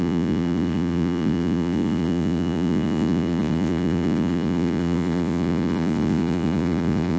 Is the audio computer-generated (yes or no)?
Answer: yes